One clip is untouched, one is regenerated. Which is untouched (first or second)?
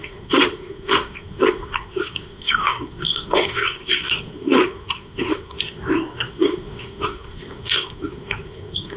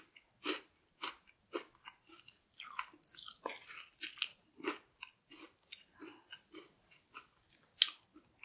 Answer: second